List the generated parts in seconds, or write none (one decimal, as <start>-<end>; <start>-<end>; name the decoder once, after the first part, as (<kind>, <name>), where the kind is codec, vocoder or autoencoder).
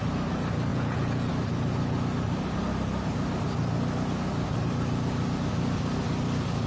0.7-1.3 (vocoder, Vocos)